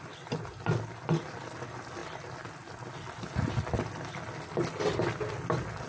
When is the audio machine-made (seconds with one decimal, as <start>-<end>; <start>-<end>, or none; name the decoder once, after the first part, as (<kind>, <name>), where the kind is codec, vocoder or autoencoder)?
none